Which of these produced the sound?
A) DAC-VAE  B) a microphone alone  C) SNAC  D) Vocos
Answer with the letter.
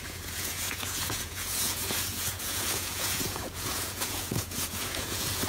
D